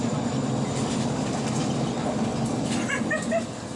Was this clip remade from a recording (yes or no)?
no